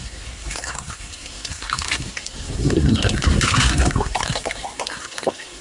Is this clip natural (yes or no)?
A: no